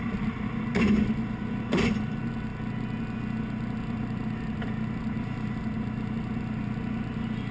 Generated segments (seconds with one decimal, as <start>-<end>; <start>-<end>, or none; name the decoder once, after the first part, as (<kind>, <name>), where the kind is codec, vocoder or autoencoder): none